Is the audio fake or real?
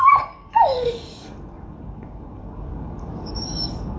fake